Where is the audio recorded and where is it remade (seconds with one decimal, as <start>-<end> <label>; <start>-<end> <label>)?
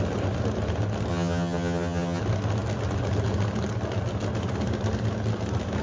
0.0-1.1 recorded; 1.1-2.2 remade; 2.2-5.8 recorded